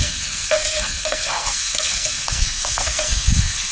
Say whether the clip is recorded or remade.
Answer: remade